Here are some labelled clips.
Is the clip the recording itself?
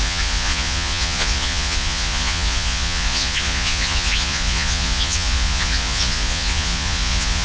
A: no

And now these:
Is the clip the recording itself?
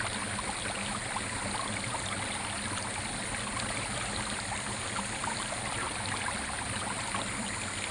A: yes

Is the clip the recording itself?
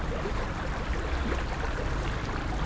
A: yes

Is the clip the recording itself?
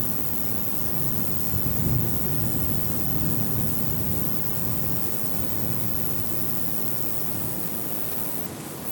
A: yes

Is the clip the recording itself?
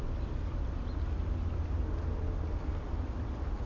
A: yes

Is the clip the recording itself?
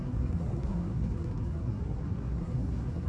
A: no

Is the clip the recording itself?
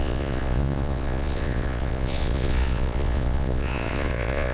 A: no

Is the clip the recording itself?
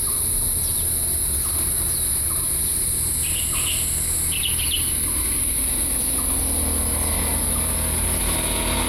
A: yes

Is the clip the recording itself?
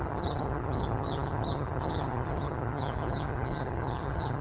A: no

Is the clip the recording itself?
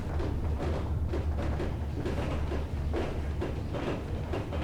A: yes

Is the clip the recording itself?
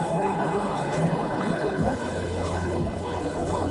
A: no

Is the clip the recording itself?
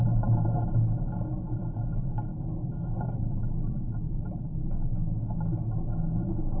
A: yes